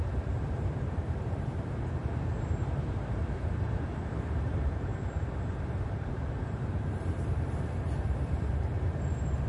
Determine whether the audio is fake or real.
fake